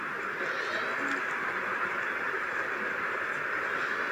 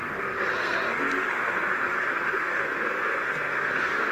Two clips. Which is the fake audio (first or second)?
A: second